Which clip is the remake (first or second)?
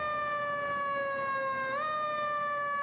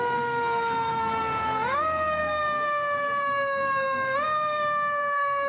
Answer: second